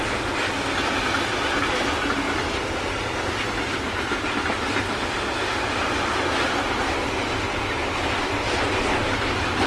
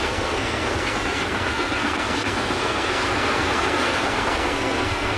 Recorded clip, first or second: first